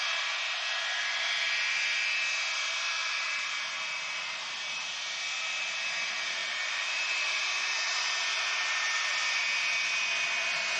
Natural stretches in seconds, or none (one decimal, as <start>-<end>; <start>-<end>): 0.0-3.0; 3.7-6.4; 8.1-10.8